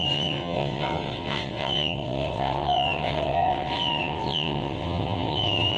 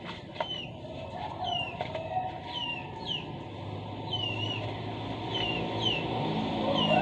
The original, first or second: second